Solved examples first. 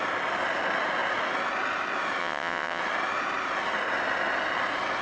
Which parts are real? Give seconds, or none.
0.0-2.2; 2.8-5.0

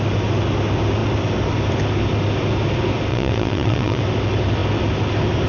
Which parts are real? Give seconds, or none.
0.0-3.1; 4.0-5.5

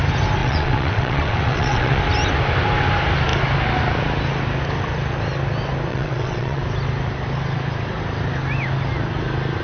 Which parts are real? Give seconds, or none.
0.0-0.4; 2.0-5.9; 6.6-9.6

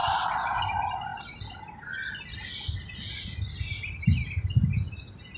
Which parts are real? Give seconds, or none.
0.6-5.4